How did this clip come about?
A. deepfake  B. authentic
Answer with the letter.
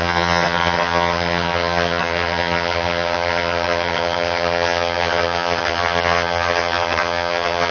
A